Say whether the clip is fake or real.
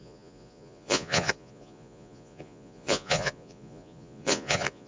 fake